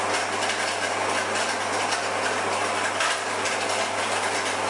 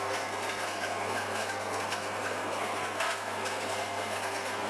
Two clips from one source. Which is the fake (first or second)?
second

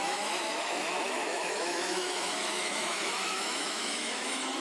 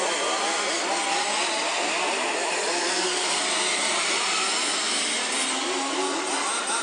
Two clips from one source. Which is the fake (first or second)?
first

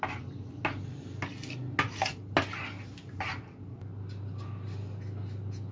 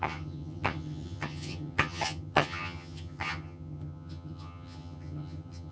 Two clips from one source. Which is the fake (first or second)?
second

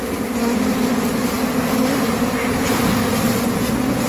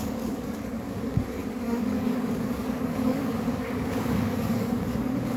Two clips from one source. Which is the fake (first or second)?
second